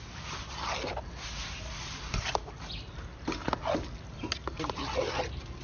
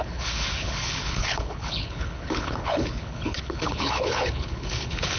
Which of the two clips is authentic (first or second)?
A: first